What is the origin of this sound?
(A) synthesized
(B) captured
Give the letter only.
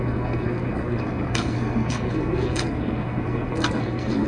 A